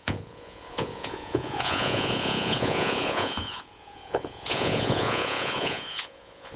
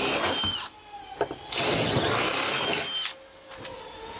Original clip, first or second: second